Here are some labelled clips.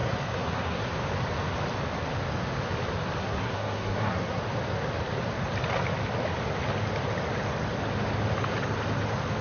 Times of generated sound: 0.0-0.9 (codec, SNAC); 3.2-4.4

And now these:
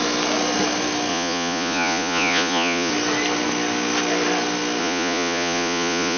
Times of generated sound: 1.1-2.9 (vocoder, Vocos); 4.8-6.2

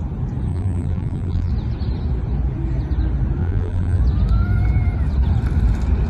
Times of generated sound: 0.5-1.5 (vocoder, BigVGAN v2); 3.4-4.0

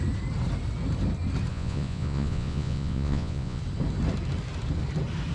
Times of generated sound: 1.5-3.6 (vocoder, Vocos)